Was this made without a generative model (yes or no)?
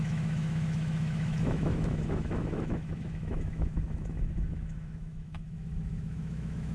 no